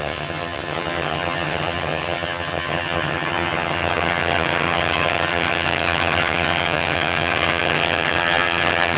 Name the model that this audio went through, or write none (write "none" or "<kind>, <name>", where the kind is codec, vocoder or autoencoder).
vocoder, HiFi-GAN